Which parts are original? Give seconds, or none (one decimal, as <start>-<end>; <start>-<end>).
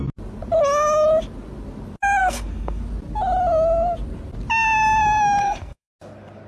0.0-2.2; 2.8-5.4; 5.9-6.5